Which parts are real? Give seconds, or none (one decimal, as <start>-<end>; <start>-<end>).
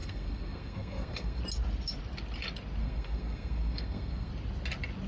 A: 1.4-2.8; 4.3-5.1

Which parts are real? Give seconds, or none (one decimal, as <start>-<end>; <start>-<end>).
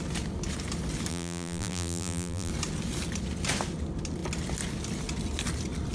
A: 0.0-1.1; 2.5-5.9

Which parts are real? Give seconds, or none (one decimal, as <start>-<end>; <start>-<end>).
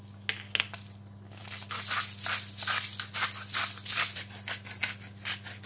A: 0.0-5.7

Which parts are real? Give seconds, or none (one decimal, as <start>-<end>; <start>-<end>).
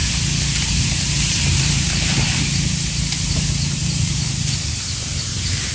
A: 0.0-0.7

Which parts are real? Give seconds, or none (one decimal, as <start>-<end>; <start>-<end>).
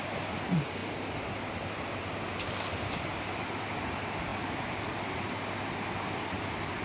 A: 0.0-6.8